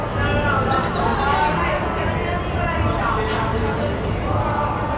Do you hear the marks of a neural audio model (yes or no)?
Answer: no